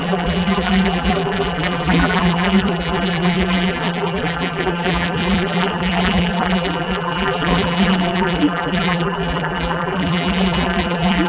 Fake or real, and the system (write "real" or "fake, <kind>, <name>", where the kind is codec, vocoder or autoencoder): fake, vocoder, BigVGAN v2